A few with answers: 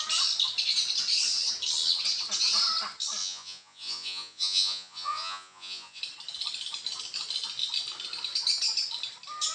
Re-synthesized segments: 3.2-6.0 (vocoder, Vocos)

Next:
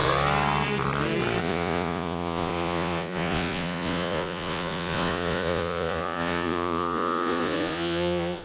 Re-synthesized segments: 1.4-8.4 (vocoder, Vocos)

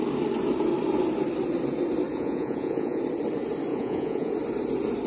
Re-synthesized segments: 2.1-3.0 (vocoder, Vocos); 3.7-4.3

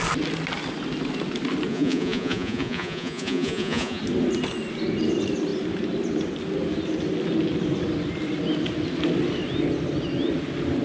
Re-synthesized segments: 1.7-4.0 (vocoder, Vocos)

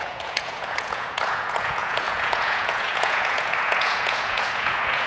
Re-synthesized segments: 0.0-5.1 (vocoder, Vocos)

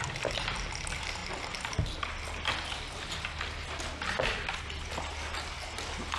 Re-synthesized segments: none

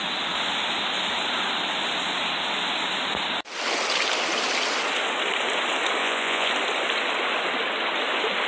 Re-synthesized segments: 6.0-6.5 (vocoder, Vocos)

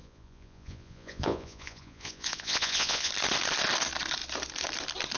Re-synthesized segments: 0.0-3.1 (vocoder, Vocos)